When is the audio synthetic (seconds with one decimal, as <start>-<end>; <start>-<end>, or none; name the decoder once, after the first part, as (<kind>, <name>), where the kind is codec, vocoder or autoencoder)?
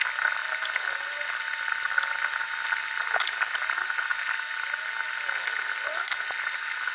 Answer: none